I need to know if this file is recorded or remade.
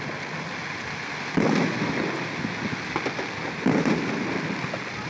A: recorded